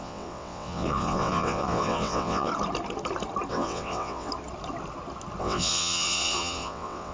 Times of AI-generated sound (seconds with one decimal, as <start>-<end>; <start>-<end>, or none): 0.0-2.5; 3.5-4.3; 5.4-7.1